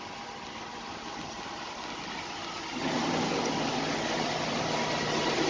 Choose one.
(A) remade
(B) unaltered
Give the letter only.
B